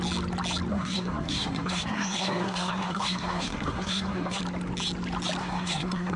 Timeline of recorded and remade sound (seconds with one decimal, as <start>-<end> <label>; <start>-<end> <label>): 0.0-0.7 recorded; 0.7-4.4 remade; 4.4-5.4 recorded; 5.4-6.2 remade

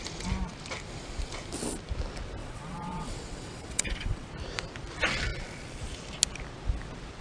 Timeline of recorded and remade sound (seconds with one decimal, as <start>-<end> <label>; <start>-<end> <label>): 0.0-2.4 recorded; 2.4-4.3 remade; 4.3-7.2 recorded

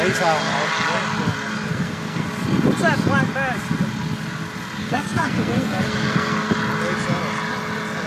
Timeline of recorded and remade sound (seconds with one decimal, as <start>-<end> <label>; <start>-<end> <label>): 0.0-1.7 recorded; 1.7-2.3 remade; 2.3-4.8 recorded; 4.8-6.5 remade; 6.5-8.1 recorded